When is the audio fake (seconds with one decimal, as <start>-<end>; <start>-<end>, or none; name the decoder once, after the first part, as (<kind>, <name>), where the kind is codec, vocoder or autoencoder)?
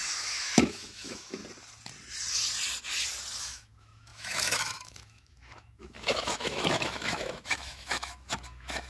0.0-1.4 (autoencoder, DAC-VAE); 3.4-8.9